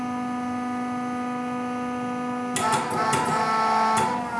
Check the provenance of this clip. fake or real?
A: real